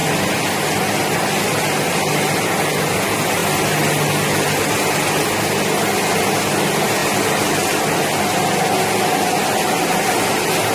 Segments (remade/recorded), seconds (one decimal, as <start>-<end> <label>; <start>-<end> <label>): 0.0-10.7 recorded